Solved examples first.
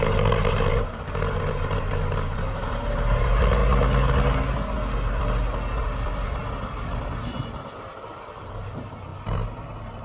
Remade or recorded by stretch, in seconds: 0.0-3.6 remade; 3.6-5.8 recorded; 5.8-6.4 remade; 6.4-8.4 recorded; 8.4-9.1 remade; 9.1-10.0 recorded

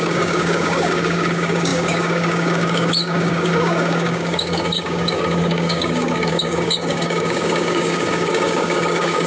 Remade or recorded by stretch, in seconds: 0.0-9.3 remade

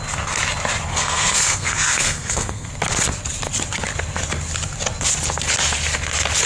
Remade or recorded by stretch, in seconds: 0.0-0.9 recorded; 0.9-2.7 remade; 2.7-6.5 recorded

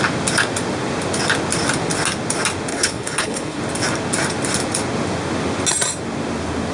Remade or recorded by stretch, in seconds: 0.0-2.7 recorded; 2.7-3.6 remade; 3.6-6.7 recorded

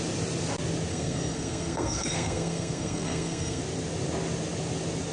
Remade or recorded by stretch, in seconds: 0.0-0.9 recorded; 0.9-3.6 remade; 3.6-5.1 recorded

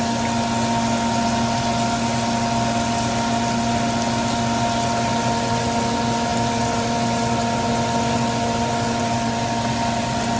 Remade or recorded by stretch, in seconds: 0.0-10.4 recorded